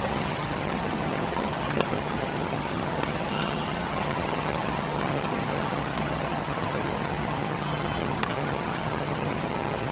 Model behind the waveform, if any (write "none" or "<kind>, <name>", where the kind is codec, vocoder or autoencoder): vocoder, HiFi-GAN